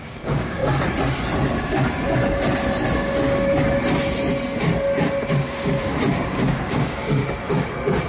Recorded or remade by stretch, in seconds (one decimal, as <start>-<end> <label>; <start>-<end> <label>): 0.0-0.6 remade; 0.6-5.3 recorded; 5.3-7.2 remade; 7.2-8.1 recorded